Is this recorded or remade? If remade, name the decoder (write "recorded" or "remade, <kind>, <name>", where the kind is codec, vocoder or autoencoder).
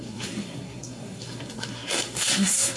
remade, codec, SNAC